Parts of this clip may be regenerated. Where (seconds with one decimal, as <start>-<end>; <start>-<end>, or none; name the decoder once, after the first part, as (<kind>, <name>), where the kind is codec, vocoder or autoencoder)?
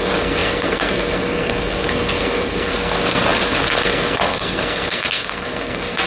0.0-6.1 (codec, SNAC)